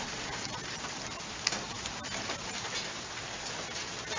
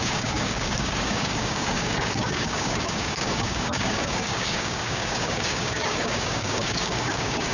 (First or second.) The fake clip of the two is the second